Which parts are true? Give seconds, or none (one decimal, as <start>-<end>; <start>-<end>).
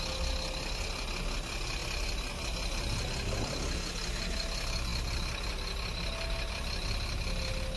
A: 0.0-7.8